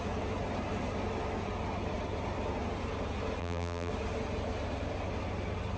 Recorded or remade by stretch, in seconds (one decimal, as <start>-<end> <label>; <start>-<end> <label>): 0.0-3.4 recorded; 3.4-3.9 remade; 3.9-5.8 recorded